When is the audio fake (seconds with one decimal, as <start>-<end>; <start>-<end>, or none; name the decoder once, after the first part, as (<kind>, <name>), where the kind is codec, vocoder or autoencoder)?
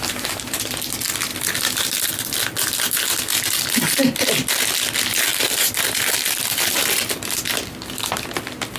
5.3-8.4 (vocoder, BigVGAN v2)